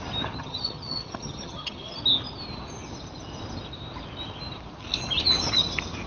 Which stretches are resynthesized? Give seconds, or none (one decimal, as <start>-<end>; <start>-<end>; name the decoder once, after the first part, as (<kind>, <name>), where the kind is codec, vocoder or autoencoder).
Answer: 0.4-2.0 (vocoder, HiFi-GAN)

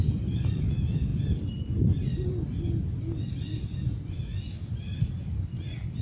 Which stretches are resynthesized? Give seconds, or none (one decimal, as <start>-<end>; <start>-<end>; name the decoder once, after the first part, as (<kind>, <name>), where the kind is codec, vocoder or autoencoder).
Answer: none

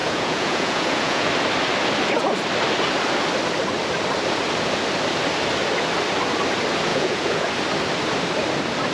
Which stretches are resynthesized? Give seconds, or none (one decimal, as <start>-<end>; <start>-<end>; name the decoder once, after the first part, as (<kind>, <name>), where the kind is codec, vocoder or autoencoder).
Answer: 0.0-1.3 (vocoder, Vocos); 6.9-7.5

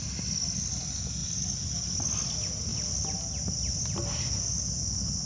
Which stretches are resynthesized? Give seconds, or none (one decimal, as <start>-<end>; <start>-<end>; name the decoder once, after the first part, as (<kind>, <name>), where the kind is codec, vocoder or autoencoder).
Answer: none

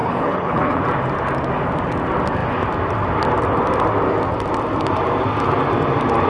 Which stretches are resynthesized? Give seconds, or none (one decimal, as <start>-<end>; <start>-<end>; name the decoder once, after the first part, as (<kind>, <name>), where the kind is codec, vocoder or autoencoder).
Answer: 0.0-0.8 (codec, HILCodec)